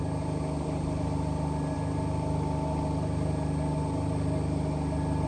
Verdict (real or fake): real